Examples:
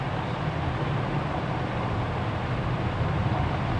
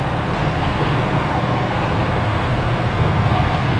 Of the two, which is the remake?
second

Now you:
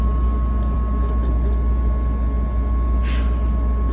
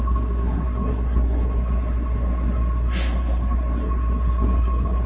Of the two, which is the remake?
second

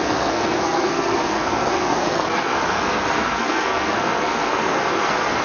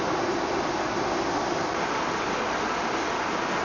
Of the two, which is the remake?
first